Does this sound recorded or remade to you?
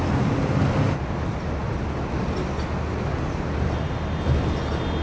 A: recorded